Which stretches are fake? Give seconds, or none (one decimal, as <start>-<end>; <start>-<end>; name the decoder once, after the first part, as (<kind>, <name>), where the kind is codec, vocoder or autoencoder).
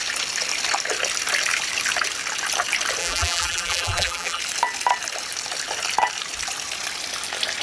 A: 3.0-4.4 (vocoder, BigVGAN v2)